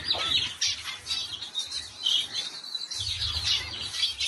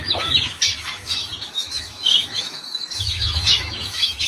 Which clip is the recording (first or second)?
first